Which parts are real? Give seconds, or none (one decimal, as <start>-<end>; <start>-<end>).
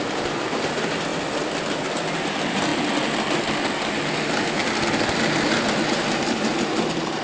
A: 1.1-2.3; 2.7-4.1; 4.6-5.9